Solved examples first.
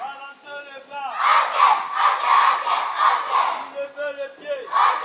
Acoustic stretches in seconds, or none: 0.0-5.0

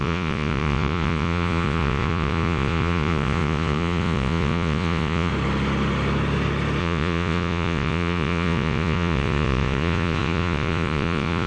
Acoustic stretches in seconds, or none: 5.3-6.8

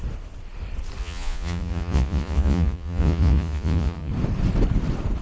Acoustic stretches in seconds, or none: 0.0-1.0; 4.1-5.2

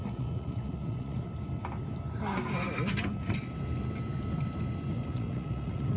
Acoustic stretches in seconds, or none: 1.3-4.9